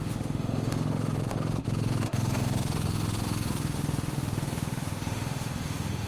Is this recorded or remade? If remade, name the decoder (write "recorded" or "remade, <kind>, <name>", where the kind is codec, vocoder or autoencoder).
remade, autoencoder, DAC-VAE